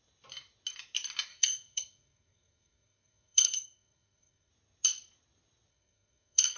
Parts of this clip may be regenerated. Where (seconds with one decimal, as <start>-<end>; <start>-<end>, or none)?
1.3-4.5; 5.7-6.6